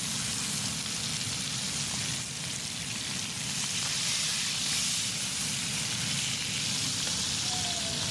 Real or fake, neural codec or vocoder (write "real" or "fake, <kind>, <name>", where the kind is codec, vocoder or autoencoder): real